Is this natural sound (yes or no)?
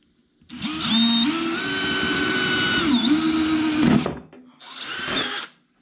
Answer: yes